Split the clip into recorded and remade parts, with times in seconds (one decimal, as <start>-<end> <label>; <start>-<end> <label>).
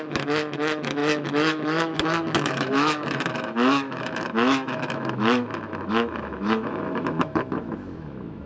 0.0-8.5 remade